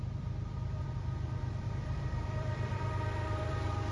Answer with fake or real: fake